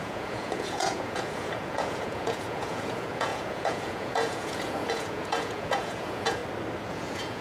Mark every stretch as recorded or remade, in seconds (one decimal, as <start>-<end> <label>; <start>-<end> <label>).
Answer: 0.0-6.4 remade; 6.4-6.9 recorded; 6.9-7.4 remade